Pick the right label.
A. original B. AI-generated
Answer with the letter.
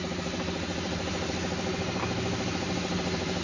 A